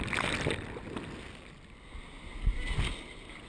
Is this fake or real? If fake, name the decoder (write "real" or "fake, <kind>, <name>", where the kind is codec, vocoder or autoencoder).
real